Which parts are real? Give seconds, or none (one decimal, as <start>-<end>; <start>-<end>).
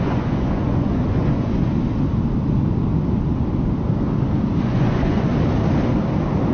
1.6-4.6; 5.3-6.5